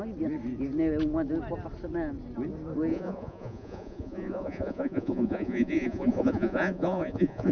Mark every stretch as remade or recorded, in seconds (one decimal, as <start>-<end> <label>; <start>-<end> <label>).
0.0-2.9 recorded; 2.9-7.5 remade